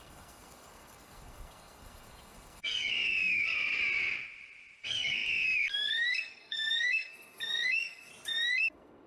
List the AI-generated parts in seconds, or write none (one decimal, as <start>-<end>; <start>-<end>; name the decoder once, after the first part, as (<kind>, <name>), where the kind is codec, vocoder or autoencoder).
0.0-3.8 (codec, SNAC); 4.8-8.1; 8.6-9.1